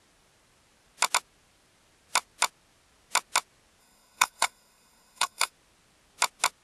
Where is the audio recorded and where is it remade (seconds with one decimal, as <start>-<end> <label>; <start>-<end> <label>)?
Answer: 0.0-3.8 recorded; 3.8-5.5 remade; 5.5-6.6 recorded